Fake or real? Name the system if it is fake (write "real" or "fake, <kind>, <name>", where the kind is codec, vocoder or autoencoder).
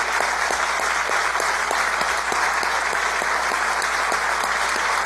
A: real